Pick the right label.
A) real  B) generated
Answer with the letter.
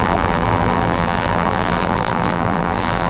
B